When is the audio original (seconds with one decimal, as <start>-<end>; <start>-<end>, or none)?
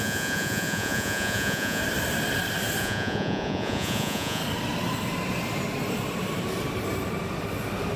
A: 1.8-2.8; 4.4-8.0